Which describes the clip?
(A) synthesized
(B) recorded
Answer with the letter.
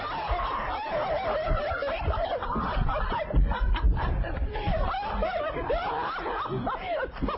A